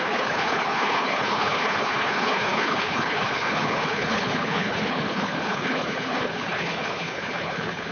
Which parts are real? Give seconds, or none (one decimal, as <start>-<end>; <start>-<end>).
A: none